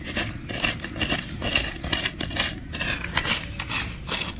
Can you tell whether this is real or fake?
real